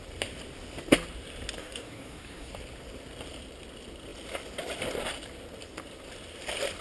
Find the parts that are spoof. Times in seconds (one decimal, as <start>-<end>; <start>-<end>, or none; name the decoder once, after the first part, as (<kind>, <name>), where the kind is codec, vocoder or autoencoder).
1.6-2.5 (codec, DAC)